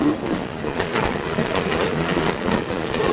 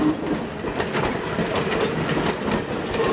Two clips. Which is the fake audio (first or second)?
first